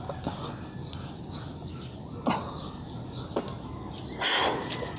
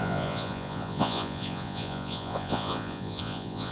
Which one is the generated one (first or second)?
second